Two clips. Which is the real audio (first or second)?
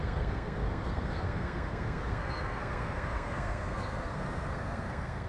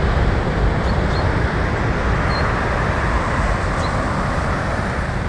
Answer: second